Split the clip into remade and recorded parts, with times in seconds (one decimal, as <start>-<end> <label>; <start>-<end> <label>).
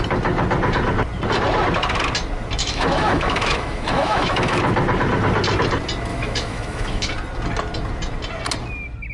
0.0-2.6 recorded; 2.6-4.6 remade; 4.6-6.1 recorded; 6.1-7.1 remade; 7.1-9.1 recorded